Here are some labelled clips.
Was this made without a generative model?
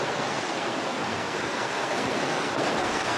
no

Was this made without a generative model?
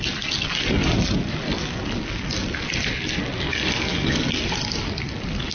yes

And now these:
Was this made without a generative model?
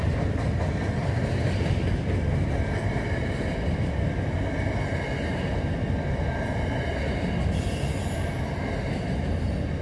yes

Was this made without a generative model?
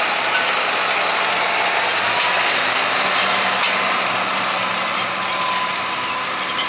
yes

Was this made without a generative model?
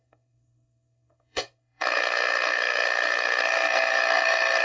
no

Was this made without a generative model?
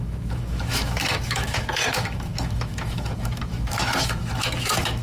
no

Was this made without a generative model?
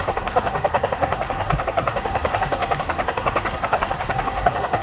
no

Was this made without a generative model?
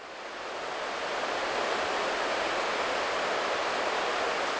yes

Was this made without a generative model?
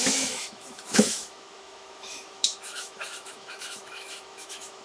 no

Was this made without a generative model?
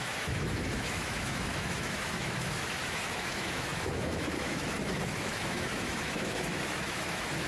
no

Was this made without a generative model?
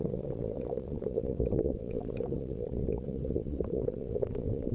no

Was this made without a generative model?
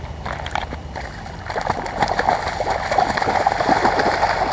yes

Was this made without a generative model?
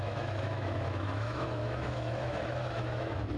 no